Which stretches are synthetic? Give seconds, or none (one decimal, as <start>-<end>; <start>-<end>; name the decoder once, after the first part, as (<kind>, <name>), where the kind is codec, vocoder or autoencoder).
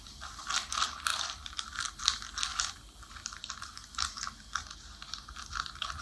1.1-2.0 (vocoder, BigVGAN v2); 2.5-3.5